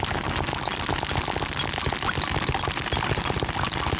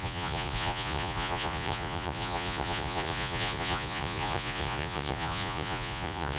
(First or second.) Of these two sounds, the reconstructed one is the second